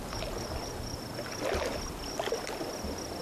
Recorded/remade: recorded